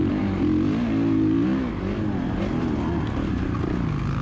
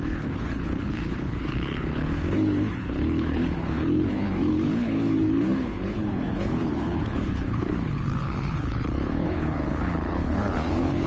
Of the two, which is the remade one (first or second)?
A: second